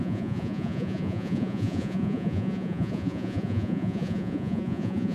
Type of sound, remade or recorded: remade